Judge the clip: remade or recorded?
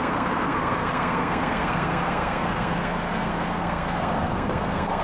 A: remade